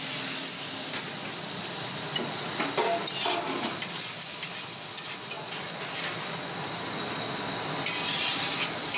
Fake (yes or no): no